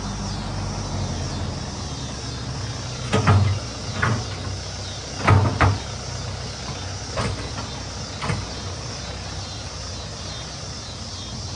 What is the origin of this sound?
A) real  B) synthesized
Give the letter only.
A